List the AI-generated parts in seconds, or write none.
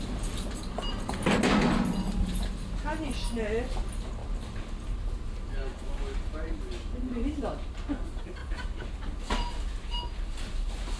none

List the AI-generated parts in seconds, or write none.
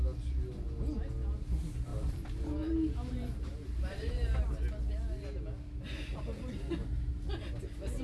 1.9-4.4 (vocoder, BigVGAN v2); 6.1-6.7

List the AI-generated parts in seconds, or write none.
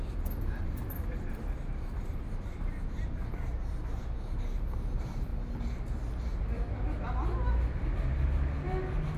0.0-5.3 (vocoder, BigVGAN v2)